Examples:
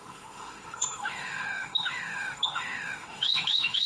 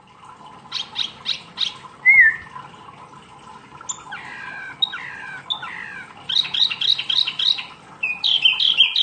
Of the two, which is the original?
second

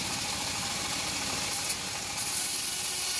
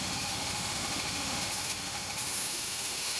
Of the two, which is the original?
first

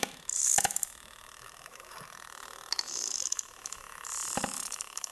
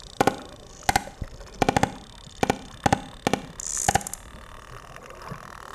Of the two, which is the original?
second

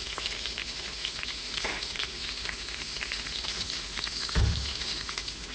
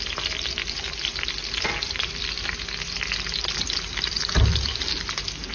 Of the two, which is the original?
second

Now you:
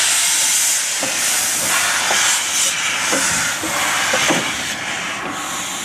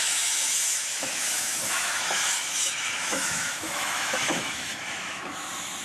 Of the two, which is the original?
first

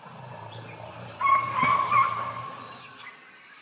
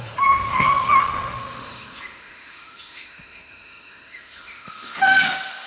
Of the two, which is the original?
first